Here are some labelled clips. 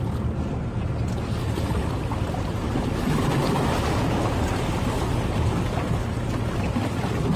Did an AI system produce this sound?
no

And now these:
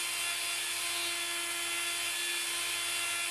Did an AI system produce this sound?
no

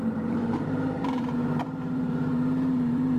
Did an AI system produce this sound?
yes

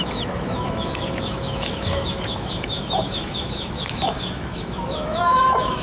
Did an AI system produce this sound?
yes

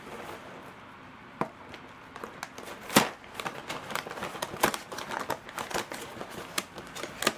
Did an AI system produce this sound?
no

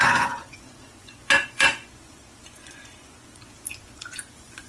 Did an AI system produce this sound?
yes